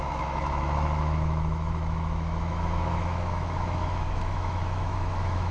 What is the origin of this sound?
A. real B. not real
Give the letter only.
B